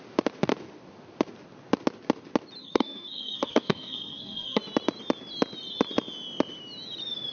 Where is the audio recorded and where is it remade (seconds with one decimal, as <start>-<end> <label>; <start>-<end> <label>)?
0.0-2.6 recorded; 2.6-4.6 remade; 4.6-7.3 recorded